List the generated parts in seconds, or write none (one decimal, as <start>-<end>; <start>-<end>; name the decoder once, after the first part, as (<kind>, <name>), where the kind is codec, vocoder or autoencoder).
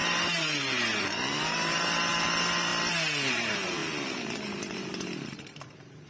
0.0-2.7 (vocoder, BigVGAN v2); 3.3-6.1